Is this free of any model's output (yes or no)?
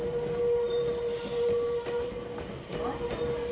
yes